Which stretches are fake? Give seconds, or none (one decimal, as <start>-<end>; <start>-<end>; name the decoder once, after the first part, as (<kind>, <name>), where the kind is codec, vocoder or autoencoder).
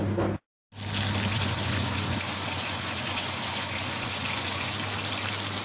1.3-4.7 (vocoder, Vocos)